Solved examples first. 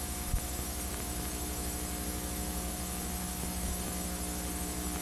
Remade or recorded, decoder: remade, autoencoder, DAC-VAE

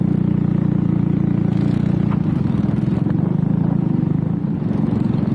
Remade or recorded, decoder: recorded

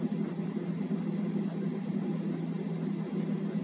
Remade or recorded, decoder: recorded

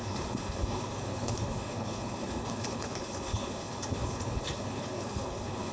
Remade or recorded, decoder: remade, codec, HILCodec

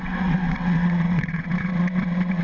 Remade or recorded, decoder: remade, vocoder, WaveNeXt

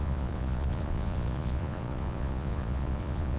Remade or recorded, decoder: remade, vocoder, Vocos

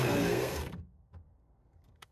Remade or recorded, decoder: remade, codec, SNAC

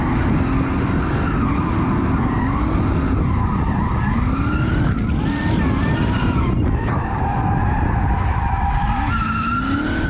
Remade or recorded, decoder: recorded